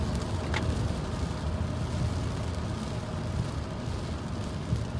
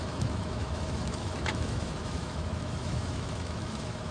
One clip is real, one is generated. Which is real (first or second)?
first